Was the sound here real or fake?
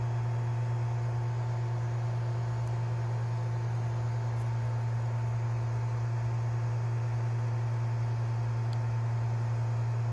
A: real